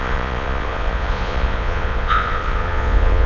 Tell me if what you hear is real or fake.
fake